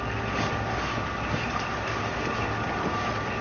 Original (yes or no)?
yes